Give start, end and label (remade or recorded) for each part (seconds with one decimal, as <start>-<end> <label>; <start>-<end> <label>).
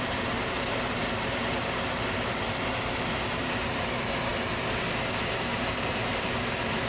0.0-4.3 remade; 4.3-5.2 recorded; 5.2-6.0 remade; 6.0-6.9 recorded